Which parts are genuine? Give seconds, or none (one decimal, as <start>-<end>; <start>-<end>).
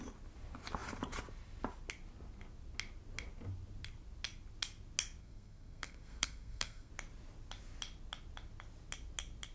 0.0-5.2; 6.9-9.5